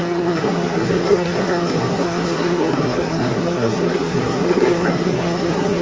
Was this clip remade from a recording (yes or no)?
yes